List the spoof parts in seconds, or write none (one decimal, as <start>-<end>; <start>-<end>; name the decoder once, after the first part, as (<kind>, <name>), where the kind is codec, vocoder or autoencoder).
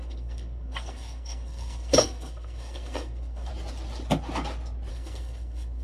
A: 0.0-3.5 (codec, SNAC); 4.9-5.8